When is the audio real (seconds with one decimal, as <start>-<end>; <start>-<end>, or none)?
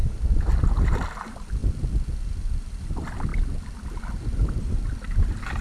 0.0-5.6